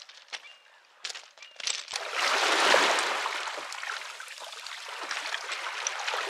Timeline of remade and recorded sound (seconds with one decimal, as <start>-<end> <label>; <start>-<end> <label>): 0.0-6.3 recorded